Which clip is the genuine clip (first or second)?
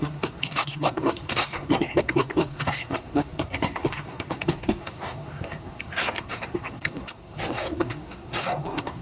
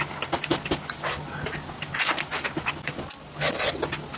second